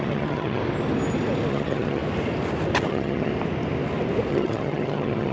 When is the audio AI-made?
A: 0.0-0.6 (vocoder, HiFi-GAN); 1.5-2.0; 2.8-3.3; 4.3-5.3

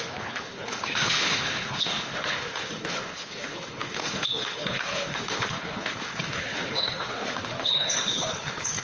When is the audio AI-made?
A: 0.0-8.8 (codec, HILCodec)

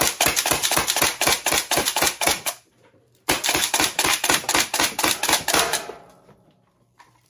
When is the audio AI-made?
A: 0.6-5.0 (vocoder, BigVGAN v2)

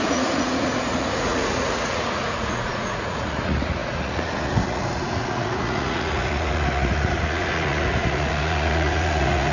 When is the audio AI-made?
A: 0.0-9.5 (vocoder, Vocos)

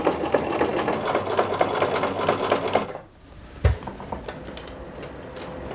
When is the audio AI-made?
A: none